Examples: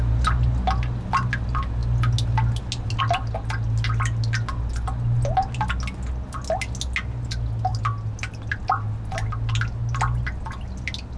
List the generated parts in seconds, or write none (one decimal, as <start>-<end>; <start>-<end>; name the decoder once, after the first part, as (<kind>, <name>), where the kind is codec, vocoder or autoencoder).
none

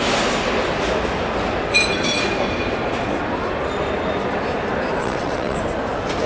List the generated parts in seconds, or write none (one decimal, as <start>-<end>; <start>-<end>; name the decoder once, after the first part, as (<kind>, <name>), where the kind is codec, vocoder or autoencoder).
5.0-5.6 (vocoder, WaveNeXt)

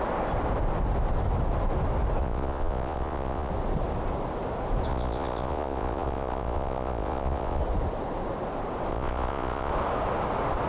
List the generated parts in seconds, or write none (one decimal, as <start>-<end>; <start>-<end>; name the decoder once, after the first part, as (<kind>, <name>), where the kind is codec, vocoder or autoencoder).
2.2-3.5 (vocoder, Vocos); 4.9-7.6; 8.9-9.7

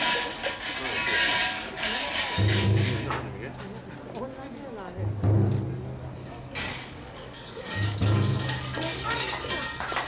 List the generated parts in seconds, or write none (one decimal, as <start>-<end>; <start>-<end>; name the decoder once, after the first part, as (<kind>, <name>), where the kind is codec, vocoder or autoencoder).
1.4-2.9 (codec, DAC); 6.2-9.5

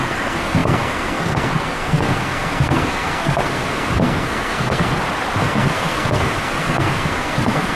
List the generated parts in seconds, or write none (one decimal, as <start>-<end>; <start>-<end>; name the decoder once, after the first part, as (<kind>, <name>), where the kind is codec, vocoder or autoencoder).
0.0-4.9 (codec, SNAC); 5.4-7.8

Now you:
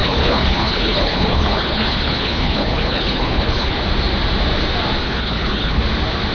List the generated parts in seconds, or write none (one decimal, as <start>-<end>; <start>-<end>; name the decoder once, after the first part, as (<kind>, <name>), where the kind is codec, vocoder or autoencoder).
0.0-3.8 (codec, HILCodec); 5.0-5.8